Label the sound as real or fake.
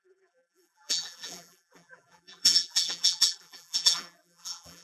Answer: fake